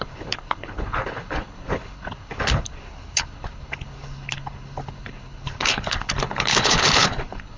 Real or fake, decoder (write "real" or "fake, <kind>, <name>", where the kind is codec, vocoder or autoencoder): fake, codec, HILCodec